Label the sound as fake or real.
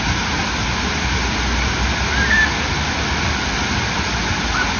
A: real